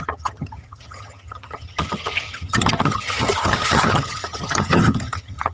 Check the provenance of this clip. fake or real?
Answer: fake